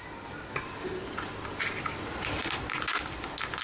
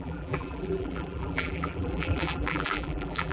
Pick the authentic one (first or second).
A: first